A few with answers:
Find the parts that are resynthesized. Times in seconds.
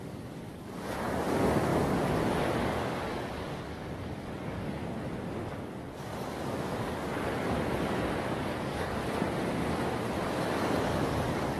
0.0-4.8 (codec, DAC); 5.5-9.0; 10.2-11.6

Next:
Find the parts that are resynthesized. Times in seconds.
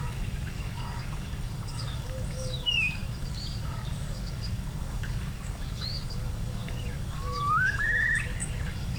0.0-9.0 (codec, DAC)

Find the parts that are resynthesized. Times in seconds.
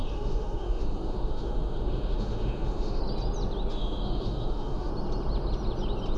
0.0-3.0 (autoencoder, DAC-VAE); 3.7-4.9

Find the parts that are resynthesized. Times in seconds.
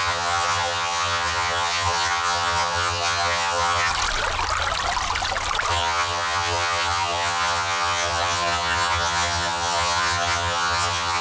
0.0-3.9 (vocoder, HiFi-GAN); 5.7-11.2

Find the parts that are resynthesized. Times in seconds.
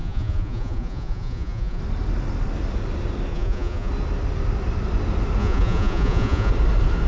0.0-1.8 (vocoder, Vocos); 3.3-3.9; 5.4-6.5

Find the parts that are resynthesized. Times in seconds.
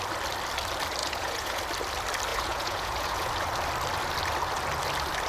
1.0-1.6 (vocoder, Vocos); 2.3-3.3